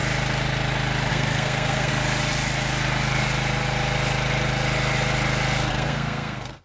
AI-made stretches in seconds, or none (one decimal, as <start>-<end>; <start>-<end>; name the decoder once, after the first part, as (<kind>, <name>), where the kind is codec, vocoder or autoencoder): 1.1-1.9 (codec, SNAC); 5.7-6.6